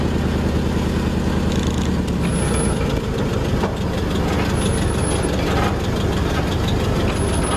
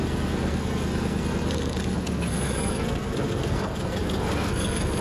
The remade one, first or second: second